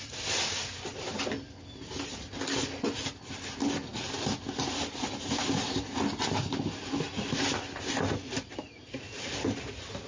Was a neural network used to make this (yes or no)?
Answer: no